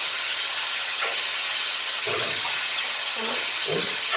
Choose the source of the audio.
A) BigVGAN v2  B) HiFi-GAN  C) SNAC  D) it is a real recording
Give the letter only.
B